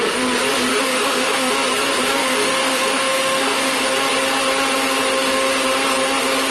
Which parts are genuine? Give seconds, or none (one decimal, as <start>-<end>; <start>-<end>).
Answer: 0.0-0.7; 1.5-2.2; 3.8-6.5